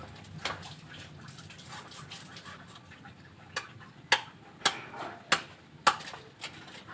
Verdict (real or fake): real